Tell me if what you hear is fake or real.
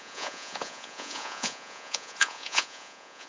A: fake